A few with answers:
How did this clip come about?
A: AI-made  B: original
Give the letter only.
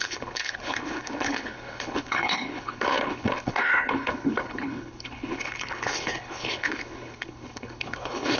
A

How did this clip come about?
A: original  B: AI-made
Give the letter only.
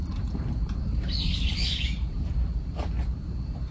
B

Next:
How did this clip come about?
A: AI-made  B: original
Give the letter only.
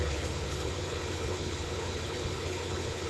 A